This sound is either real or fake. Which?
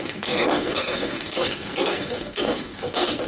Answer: fake